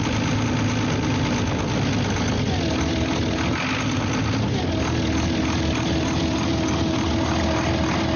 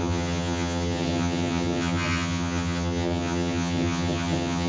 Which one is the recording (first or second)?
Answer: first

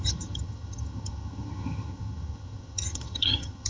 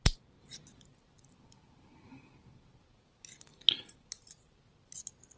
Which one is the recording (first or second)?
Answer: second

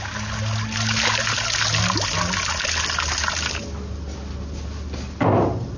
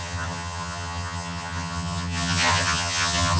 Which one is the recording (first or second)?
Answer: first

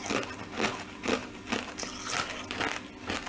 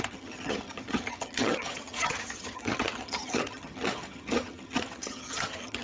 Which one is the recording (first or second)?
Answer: first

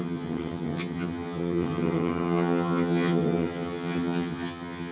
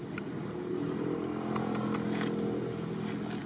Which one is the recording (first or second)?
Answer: second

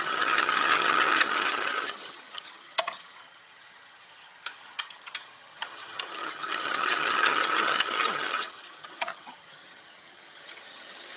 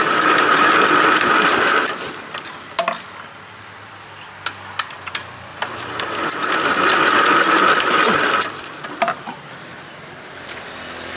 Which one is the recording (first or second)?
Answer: second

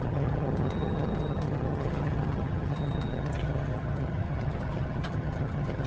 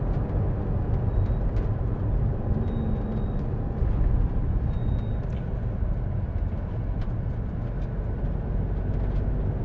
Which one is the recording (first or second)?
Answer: second